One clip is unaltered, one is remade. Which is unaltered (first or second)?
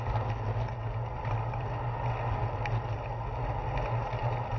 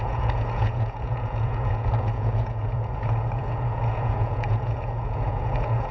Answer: first